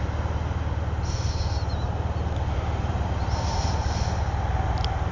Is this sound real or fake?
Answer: real